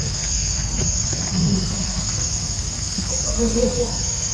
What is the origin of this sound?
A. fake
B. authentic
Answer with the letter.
A